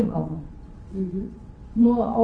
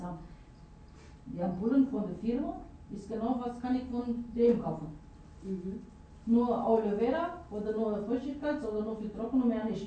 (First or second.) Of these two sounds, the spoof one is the first